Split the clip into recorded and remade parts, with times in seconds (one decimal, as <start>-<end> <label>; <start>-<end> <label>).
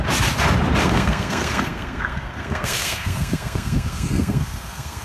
0.0-0.8 recorded; 0.8-5.0 remade